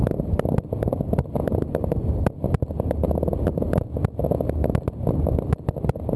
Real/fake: real